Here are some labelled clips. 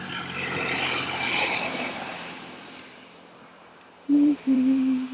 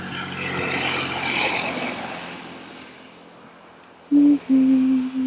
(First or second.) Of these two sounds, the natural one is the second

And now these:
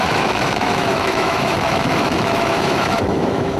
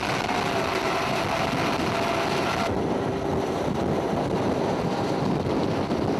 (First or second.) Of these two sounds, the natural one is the second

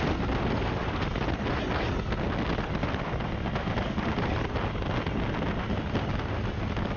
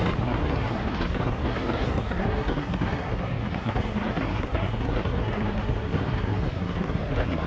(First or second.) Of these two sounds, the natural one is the first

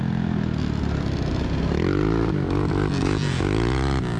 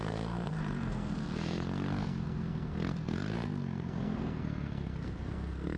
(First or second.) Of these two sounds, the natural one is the first